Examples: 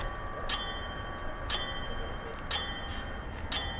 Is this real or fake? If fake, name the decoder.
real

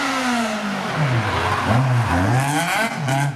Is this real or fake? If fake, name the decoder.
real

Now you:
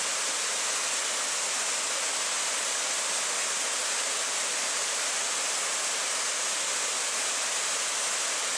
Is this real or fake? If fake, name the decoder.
real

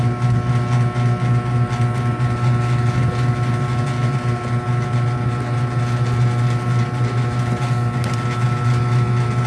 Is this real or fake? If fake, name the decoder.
real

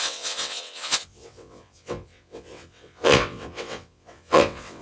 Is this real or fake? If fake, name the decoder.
fake, vocoder, WaveNeXt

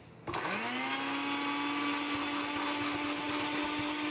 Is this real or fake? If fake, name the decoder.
real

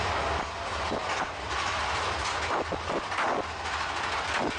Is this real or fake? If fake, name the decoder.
real